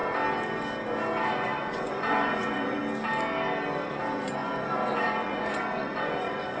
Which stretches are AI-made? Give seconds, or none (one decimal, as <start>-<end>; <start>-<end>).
1.3-2.8; 3.9-6.6